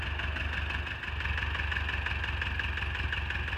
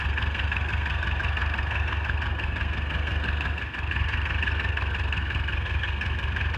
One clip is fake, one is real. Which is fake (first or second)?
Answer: second